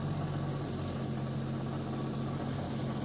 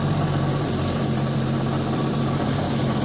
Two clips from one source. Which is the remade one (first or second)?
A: second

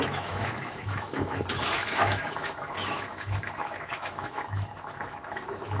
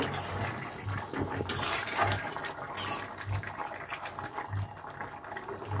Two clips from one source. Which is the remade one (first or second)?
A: first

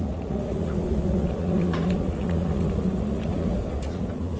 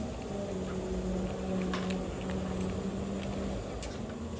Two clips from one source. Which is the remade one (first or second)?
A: first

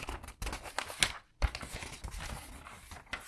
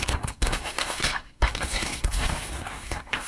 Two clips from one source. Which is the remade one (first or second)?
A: second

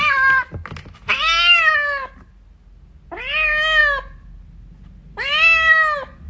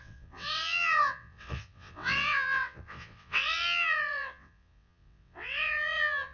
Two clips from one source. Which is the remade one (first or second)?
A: second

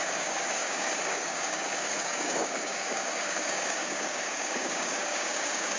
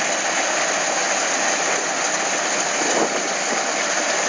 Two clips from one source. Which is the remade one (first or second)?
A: first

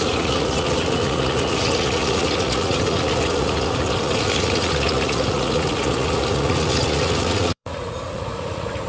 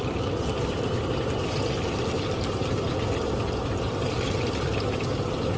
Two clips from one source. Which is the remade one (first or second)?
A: first